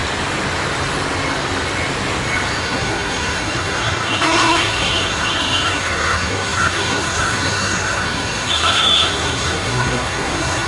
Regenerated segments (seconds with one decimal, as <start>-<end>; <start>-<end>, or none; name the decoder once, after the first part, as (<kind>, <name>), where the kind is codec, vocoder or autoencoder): 2.6-10.7 (codec, SNAC)